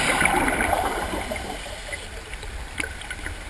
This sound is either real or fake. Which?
real